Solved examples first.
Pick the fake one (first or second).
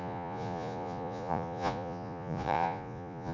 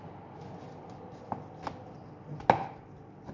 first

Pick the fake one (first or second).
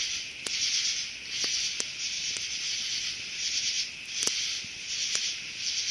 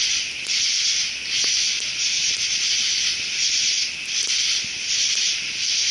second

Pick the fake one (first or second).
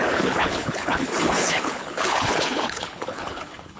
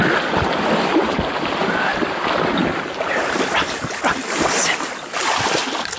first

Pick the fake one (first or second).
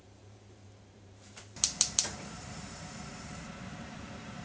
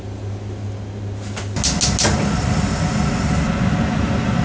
first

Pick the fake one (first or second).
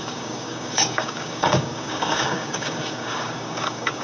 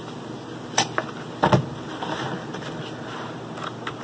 first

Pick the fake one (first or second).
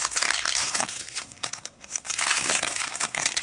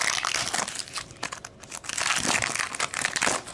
first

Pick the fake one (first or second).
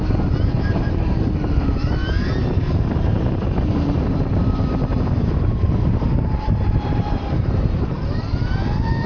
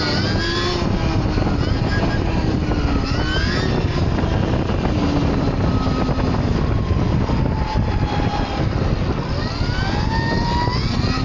first